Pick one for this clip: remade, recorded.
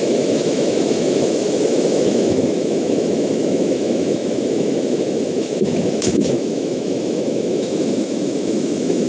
remade